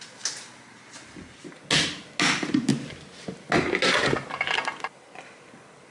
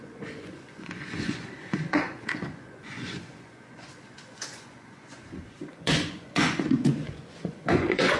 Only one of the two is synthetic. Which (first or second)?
second